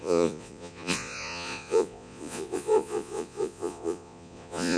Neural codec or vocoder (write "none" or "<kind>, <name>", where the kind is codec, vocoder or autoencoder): vocoder, Vocos